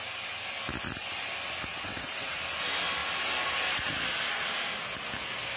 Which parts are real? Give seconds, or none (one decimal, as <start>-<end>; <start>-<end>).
0.0-1.7; 2.4-5.6